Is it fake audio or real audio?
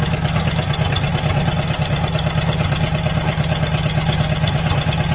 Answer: real